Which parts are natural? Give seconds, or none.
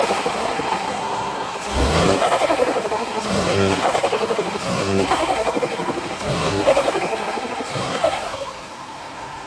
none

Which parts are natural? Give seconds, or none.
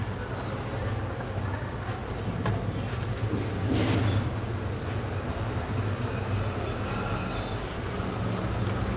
0.0-9.0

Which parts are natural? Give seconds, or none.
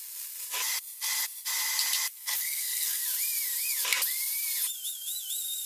0.0-2.1; 3.0-5.7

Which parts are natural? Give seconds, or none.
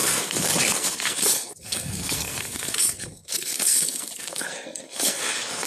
none